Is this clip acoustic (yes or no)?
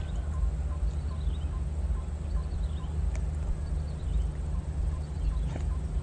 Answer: yes